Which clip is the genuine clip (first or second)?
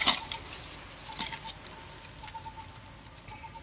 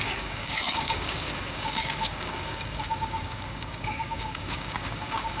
first